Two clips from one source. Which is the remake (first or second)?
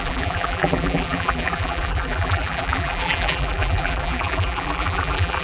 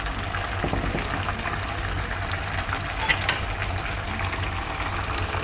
first